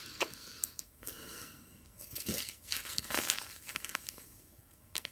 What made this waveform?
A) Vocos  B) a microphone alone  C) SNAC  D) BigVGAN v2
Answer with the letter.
C